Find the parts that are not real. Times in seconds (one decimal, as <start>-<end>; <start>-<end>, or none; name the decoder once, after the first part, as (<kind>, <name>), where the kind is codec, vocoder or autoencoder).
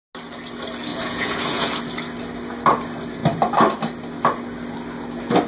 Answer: 0.9-1.8 (vocoder, Vocos)